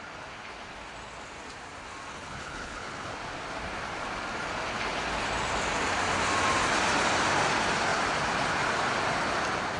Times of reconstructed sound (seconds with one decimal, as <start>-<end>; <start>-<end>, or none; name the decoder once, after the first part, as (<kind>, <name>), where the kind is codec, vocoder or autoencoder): 2.1-3.1 (codec, HILCodec)

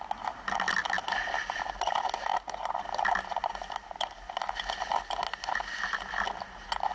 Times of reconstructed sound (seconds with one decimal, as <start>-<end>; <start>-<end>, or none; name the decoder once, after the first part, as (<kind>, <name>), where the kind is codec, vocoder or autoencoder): none

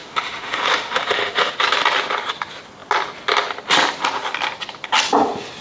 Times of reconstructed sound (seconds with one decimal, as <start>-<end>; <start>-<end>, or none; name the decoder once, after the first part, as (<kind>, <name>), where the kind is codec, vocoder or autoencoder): 0.0-1.5 (autoencoder, DAC-VAE)

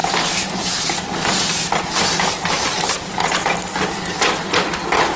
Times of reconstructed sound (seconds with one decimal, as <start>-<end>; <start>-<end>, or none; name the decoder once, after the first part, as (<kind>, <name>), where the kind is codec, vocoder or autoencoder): none

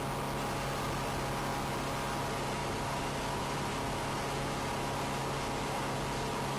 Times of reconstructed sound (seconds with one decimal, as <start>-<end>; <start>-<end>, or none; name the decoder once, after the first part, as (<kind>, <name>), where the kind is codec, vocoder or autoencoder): none